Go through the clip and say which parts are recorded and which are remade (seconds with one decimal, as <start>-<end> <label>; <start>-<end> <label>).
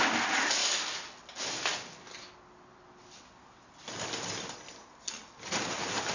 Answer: 0.0-6.1 recorded